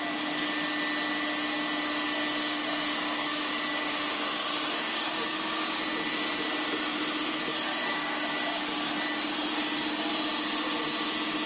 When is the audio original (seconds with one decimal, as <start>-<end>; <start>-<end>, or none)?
0.0-2.5; 5.8-7.7; 8.3-11.5